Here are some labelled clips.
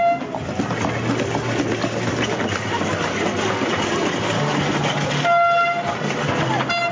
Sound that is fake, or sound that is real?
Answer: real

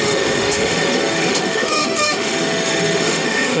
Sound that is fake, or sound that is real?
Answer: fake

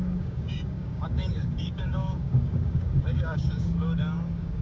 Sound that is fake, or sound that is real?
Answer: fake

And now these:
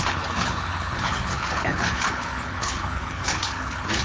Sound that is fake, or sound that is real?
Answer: fake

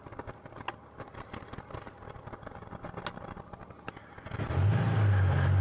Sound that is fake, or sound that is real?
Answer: real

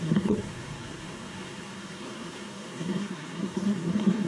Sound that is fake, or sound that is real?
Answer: fake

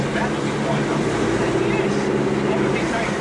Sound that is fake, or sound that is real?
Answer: real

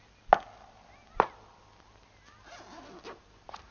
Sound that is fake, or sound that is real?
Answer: real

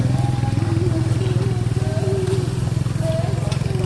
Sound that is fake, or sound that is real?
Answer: real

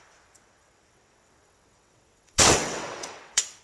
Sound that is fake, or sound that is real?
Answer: fake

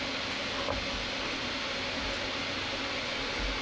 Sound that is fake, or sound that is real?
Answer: real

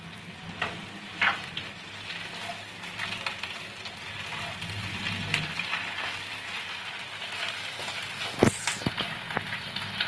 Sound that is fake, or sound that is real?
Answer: real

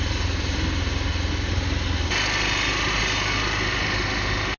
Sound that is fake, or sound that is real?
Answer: real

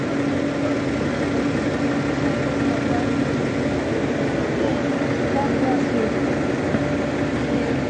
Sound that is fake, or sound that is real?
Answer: real